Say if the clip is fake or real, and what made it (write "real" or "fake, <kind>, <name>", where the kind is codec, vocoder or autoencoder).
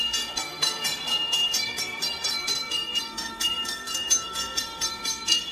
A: fake, codec, SNAC